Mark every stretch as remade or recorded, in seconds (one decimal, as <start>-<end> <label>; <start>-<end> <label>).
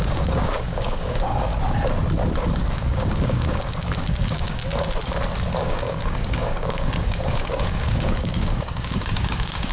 0.0-1.5 remade; 1.5-2.5 recorded; 2.5-4.6 remade; 4.6-5.6 recorded; 5.6-9.7 remade